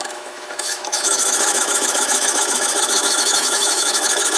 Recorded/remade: remade